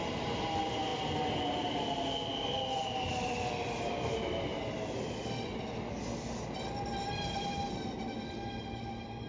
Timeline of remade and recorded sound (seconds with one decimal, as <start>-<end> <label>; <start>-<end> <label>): 0.0-9.3 recorded